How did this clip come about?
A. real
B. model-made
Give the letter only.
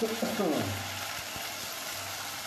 A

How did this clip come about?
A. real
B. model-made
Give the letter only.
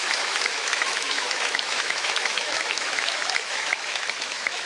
B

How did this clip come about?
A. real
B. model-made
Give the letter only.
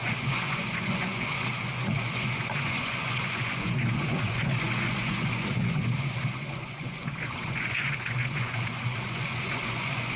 B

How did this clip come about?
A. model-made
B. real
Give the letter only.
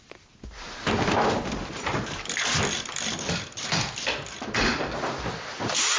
B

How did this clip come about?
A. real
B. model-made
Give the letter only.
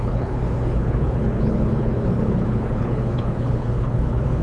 B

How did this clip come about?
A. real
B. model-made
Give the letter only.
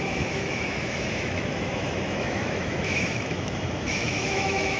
B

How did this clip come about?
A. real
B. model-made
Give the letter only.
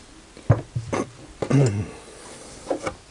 A